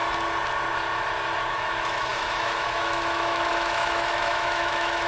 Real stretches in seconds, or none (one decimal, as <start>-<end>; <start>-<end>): 0.0-1.5

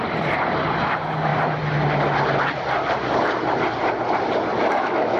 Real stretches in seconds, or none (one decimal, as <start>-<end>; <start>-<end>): 0.0-4.5

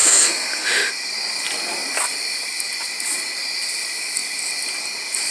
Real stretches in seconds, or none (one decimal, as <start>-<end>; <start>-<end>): 0.9-5.3